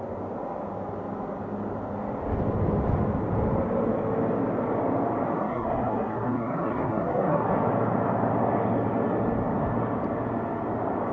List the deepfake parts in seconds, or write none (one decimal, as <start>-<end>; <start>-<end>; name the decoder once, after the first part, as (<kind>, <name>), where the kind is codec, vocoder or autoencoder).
5.4-7.5 (codec, SNAC)